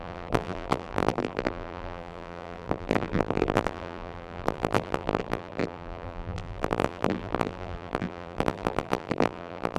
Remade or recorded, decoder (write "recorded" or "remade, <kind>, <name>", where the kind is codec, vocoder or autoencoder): remade, vocoder, BigVGAN v2